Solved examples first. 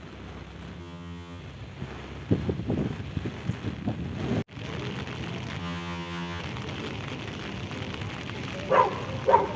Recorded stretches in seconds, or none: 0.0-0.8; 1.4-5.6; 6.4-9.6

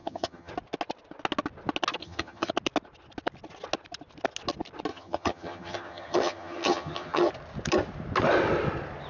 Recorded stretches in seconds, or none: 0.5-2.0; 2.5-4.9; 7.3-9.1

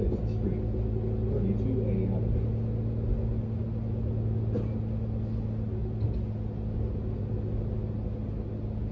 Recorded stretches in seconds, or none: 0.0-8.9

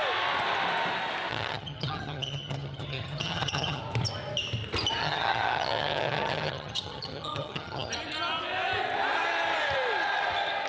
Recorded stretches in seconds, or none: 0.0-1.3; 3.8-5.0; 7.9-10.7

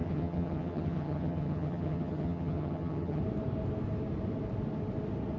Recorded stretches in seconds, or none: 3.2-5.4

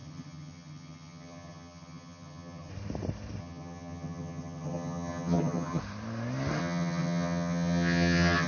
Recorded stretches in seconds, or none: 2.7-3.4; 5.8-6.6

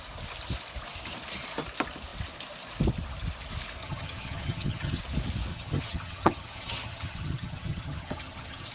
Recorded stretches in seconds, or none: 0.0-3.8; 5.0-5.5